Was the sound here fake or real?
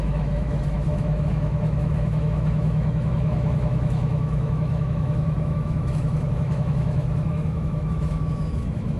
fake